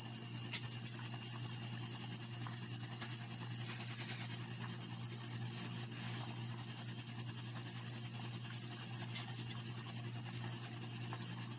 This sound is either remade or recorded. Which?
recorded